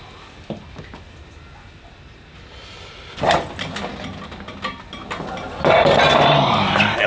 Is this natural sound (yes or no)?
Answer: yes